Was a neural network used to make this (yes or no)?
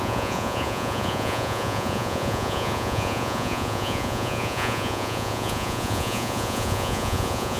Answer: yes